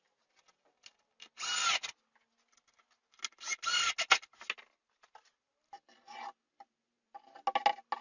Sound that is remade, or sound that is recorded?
recorded